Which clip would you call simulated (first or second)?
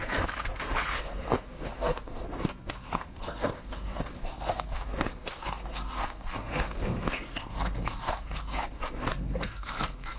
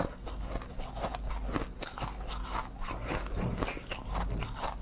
first